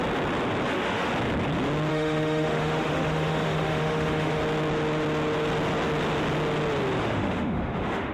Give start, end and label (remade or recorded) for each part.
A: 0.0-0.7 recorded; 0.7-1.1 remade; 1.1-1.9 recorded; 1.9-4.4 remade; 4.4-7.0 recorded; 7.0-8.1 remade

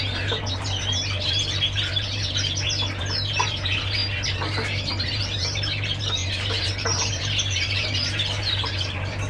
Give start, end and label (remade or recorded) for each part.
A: 0.0-9.3 remade

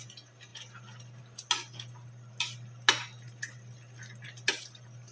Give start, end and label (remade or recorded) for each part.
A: 0.0-0.5 recorded; 0.5-1.2 remade; 1.2-5.1 recorded

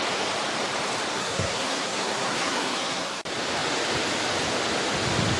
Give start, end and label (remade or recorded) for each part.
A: 0.0-1.1 recorded; 1.1-3.2 remade; 3.2-5.4 recorded

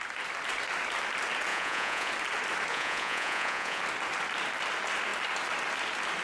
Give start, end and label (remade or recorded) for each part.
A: 0.0-1.5 recorded; 1.5-2.1 remade; 2.1-2.7 recorded; 2.7-3.8 remade; 3.8-6.2 recorded

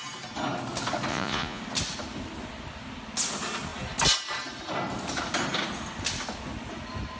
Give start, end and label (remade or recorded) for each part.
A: 0.0-1.1 recorded; 1.1-1.6 remade; 1.6-7.2 recorded

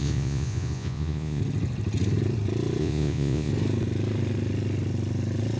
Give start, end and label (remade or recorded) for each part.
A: 0.0-1.4 remade; 1.4-2.8 recorded; 2.8-3.5 remade; 3.5-5.6 recorded

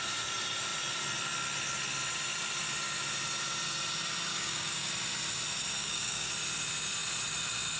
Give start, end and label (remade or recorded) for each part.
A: 0.0-4.3 recorded; 4.3-4.9 remade; 4.9-5.8 recorded; 5.8-6.3 remade; 6.3-7.8 recorded